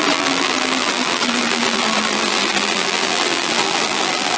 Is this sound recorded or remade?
remade